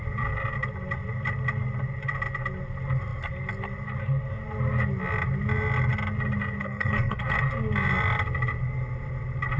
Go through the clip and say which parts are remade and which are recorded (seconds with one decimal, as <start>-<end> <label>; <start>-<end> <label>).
0.0-6.6 recorded; 6.6-7.2 remade; 7.2-9.6 recorded